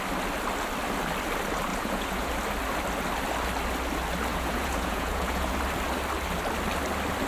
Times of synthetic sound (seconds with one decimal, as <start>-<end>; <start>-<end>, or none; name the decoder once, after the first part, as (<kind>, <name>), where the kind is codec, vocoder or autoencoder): 1.7-2.3 (vocoder, Vocos); 4.3-5.5